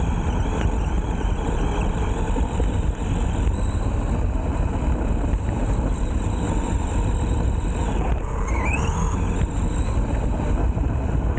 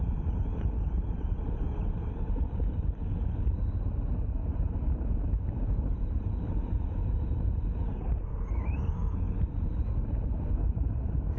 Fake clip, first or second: second